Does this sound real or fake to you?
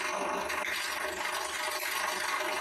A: real